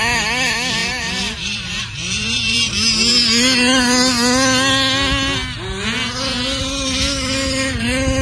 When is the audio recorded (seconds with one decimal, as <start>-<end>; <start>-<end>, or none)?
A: 0.0-0.8; 2.7-8.2